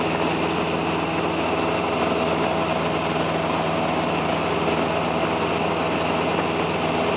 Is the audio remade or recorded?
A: recorded